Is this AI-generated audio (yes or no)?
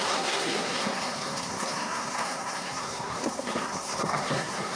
yes